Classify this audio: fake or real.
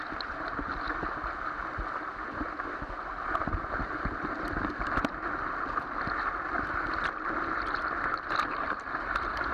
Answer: real